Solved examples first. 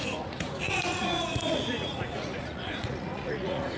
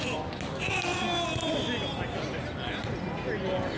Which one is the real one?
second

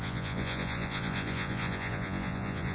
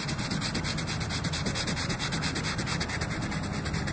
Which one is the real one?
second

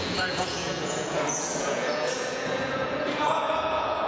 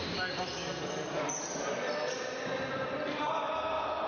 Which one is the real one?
second